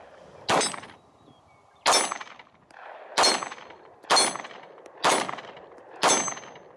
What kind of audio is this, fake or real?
real